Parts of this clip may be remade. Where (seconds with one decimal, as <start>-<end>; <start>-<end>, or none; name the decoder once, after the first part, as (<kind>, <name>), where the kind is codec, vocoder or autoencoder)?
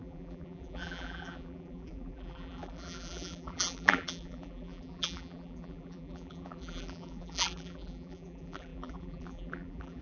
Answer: 0.0-10.0 (vocoder, BigVGAN v2)